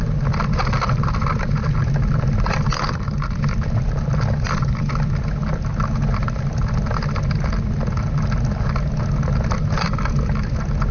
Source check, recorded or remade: recorded